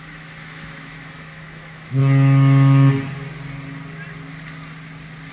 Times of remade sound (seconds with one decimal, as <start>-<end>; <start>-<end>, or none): 0.0-2.0